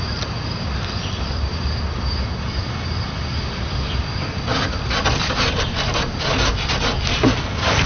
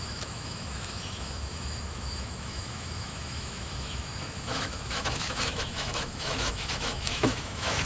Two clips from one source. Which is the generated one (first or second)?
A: second